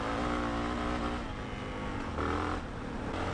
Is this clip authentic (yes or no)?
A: yes